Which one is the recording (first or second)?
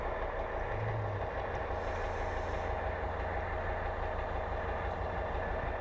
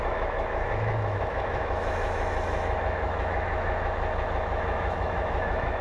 first